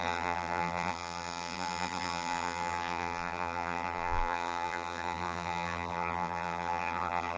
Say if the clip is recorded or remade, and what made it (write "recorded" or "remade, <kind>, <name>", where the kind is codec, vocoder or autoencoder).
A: remade, vocoder, BigVGAN v2